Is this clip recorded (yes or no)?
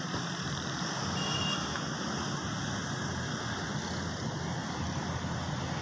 yes